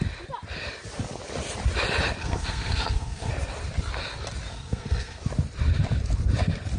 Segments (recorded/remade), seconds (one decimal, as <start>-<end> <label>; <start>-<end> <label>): 0.0-2.2 recorded; 2.2-3.3 remade; 3.3-4.5 recorded; 4.5-5.2 remade; 5.2-6.8 recorded